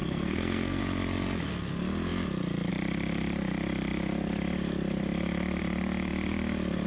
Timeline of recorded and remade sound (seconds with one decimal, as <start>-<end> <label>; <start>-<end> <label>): 0.0-0.8 remade; 0.8-6.9 recorded